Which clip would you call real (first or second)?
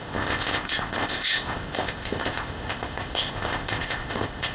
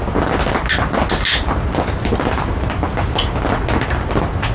second